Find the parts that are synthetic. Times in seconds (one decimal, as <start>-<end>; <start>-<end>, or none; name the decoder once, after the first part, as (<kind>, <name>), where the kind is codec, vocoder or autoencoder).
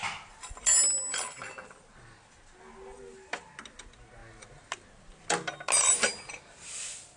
none